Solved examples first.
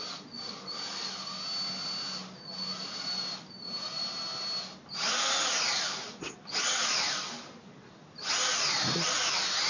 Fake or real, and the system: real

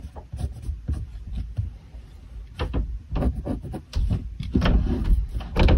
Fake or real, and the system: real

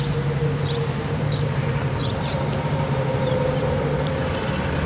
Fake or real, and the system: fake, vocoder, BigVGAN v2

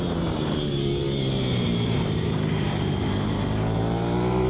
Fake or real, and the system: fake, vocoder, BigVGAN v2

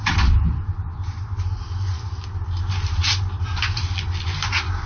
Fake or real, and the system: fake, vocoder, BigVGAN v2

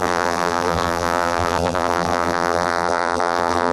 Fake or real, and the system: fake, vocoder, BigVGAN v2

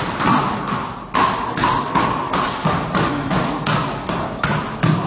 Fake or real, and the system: real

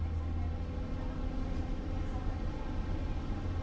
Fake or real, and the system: real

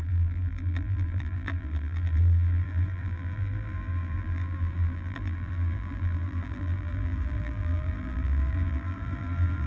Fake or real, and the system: fake, vocoder, BigVGAN v2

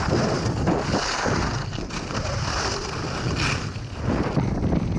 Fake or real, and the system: real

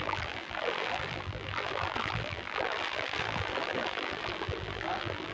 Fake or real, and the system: fake, vocoder, BigVGAN v2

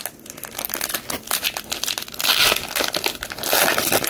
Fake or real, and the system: real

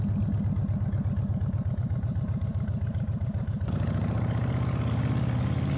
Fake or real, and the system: real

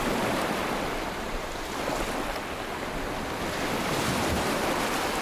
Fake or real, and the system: real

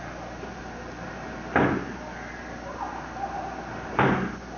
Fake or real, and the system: real